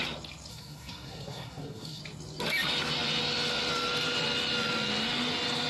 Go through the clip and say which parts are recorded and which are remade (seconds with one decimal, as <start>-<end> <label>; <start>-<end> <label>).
0.0-0.5 recorded; 0.5-2.0 remade; 2.0-5.7 recorded